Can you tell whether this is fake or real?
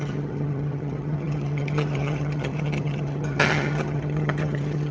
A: fake